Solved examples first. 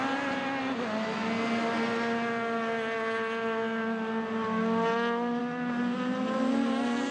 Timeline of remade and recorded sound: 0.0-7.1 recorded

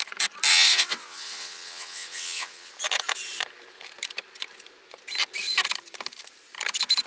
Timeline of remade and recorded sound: 0.0-0.5 recorded; 0.5-2.7 remade; 2.7-7.1 recorded

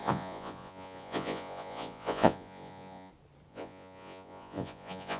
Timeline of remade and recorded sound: 0.0-3.1 remade; 3.1-3.5 recorded; 3.5-5.2 remade

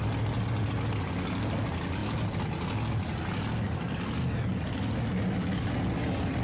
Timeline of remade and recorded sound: 0.0-6.4 recorded

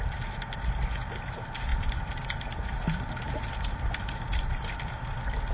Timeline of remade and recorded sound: 0.0-1.7 recorded; 1.7-5.0 remade; 5.0-5.5 recorded

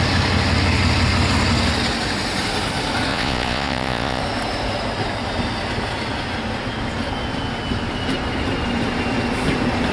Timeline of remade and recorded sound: 0.0-3.1 recorded; 3.1-4.2 remade; 4.2-9.9 recorded